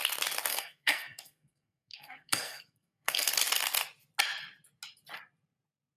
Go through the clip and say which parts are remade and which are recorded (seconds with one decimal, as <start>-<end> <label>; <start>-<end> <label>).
0.0-0.5 recorded; 0.5-3.3 remade; 3.3-6.0 recorded